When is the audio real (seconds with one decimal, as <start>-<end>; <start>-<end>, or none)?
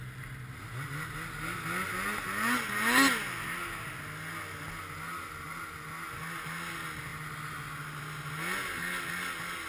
0.0-9.7